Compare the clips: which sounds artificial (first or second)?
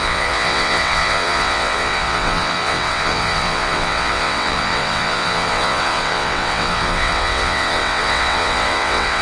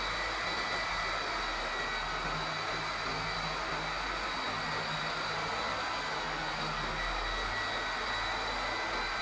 first